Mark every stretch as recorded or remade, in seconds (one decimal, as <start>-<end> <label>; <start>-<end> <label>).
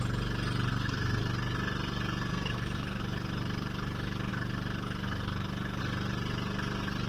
0.0-0.7 recorded; 0.7-1.2 remade; 1.2-2.3 recorded; 2.3-3.0 remade; 3.0-7.1 recorded